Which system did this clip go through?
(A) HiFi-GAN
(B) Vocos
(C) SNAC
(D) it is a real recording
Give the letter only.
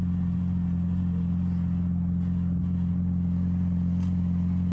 D